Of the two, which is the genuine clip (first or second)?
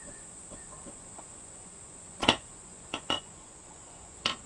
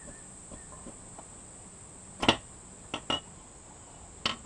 second